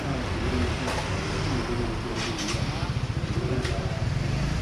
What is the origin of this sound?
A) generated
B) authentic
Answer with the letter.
A